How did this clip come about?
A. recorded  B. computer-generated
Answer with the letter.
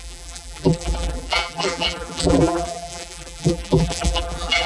B